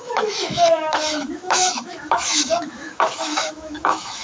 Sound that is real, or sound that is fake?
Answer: fake